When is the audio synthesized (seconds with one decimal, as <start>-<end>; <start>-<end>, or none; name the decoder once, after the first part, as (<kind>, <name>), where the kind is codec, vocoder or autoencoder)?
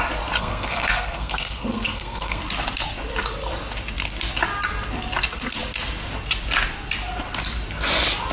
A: 0.4-2.4 (codec, SNAC)